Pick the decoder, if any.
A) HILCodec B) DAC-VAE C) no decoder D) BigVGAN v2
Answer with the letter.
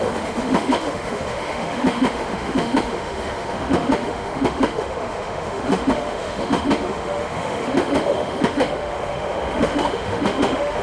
B